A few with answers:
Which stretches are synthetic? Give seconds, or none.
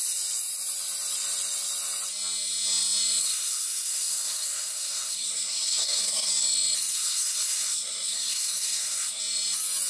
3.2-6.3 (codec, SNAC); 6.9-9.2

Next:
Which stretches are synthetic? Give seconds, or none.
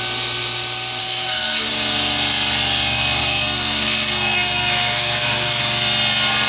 1.0-1.7 (codec, SNAC); 3.2-5.6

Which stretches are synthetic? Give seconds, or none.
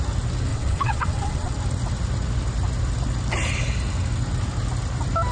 0.5-1.5 (vocoder, WaveNeXt)